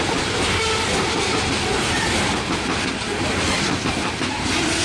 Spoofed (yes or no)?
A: no